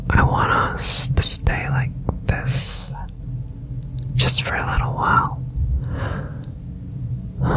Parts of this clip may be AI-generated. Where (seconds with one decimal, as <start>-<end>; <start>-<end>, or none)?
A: 2.6-3.2